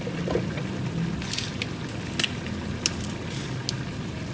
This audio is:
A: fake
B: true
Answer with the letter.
B